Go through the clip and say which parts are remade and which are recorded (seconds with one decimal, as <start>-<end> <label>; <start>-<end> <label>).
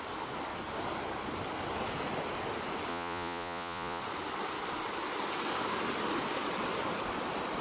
0.0-2.9 recorded; 2.9-4.0 remade; 4.0-7.6 recorded